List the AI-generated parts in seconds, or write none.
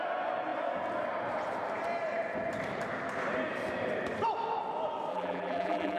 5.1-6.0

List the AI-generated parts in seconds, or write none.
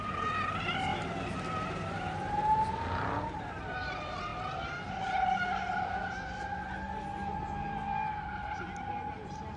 none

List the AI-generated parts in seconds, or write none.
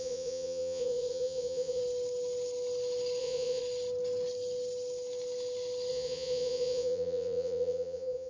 0.0-1.8; 3.2-3.6; 5.9-8.3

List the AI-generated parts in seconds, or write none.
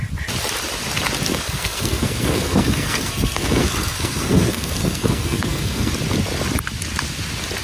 1.3-5.9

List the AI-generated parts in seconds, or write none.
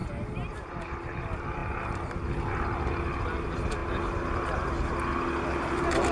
none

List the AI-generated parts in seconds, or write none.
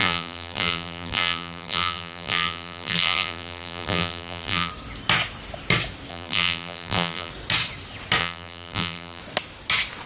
0.0-4.7; 6.1-7.3; 8.2-9.2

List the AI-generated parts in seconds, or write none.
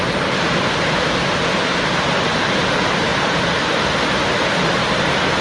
none